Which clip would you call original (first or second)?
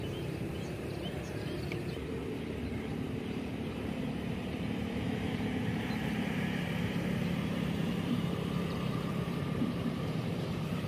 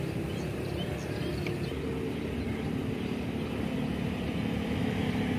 second